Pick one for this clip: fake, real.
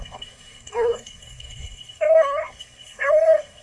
fake